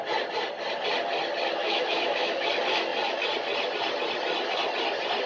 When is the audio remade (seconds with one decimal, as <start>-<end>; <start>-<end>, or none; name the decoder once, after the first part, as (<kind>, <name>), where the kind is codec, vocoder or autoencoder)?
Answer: 1.6-2.5 (autoencoder, DAC-VAE)

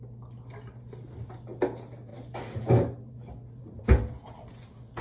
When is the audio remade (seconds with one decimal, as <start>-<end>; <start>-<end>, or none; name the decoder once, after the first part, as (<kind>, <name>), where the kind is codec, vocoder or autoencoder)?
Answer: none